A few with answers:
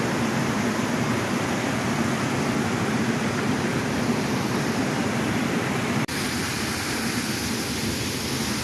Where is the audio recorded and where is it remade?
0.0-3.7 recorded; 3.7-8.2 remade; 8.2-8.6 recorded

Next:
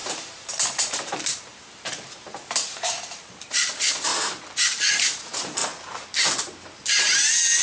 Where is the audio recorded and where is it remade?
0.0-4.1 remade; 4.1-4.9 recorded; 4.9-5.6 remade; 5.6-7.6 recorded

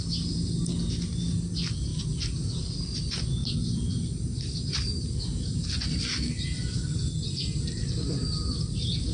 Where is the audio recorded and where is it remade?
0.0-3.4 recorded; 3.4-8.0 remade; 8.0-9.1 recorded

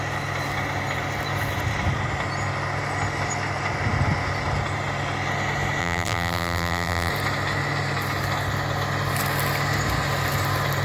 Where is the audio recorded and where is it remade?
0.0-5.8 recorded; 5.8-7.1 remade; 7.1-10.8 recorded

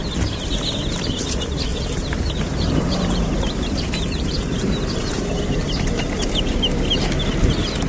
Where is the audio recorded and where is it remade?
0.0-1.7 recorded; 1.7-6.4 remade; 6.4-7.9 recorded